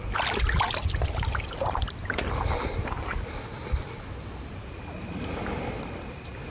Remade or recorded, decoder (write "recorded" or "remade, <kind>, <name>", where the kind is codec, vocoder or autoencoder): recorded